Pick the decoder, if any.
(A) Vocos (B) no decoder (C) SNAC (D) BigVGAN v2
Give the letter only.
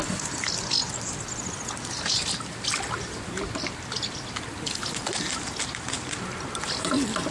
B